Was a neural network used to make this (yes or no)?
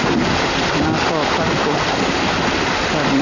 no